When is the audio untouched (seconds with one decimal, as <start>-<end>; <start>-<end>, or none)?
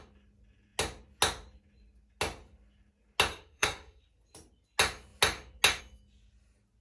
0.0-3.3; 4.0-6.8